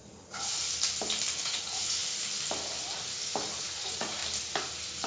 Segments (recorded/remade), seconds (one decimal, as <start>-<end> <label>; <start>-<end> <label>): 0.0-0.6 remade; 0.6-1.4 recorded; 1.4-2.0 remade; 2.0-3.6 recorded; 3.6-4.2 remade; 4.2-5.1 recorded